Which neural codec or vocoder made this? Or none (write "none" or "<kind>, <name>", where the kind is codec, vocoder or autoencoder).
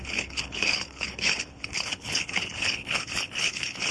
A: codec, HILCodec